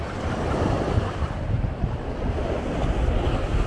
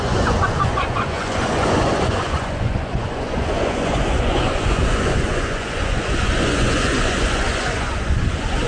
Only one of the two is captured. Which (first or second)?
first